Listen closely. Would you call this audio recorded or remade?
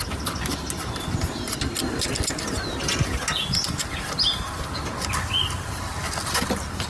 recorded